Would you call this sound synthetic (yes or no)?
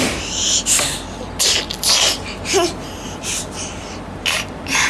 no